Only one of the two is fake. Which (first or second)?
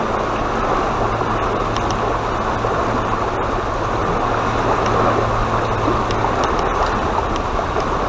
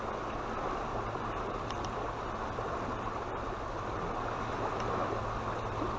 second